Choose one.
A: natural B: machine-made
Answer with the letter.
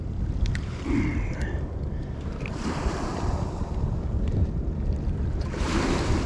B